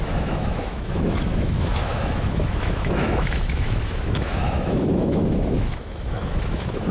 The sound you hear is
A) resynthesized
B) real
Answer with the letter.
A